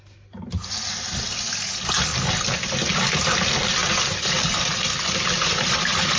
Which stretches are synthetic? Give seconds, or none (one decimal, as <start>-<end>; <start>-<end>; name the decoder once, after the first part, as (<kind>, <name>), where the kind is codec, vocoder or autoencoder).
none